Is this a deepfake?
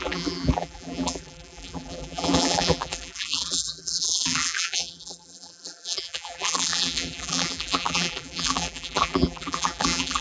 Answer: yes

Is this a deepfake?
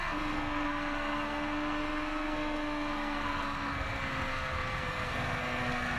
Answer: yes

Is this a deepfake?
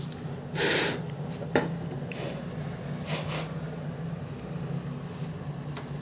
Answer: no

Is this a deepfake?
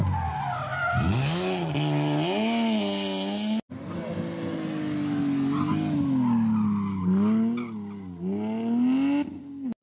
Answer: no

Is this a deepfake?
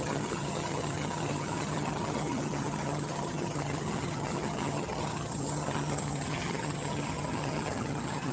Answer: yes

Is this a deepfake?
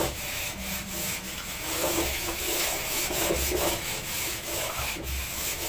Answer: yes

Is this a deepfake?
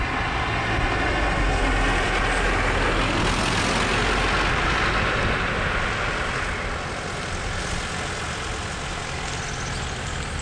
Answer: no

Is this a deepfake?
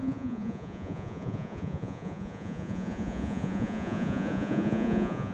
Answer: yes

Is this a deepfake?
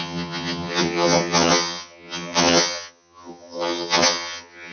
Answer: yes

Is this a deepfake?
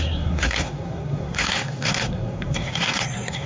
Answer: yes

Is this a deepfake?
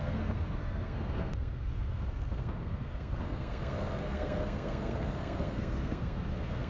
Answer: yes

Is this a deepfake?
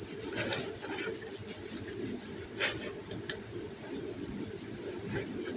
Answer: no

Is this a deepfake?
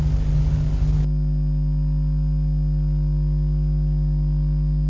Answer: no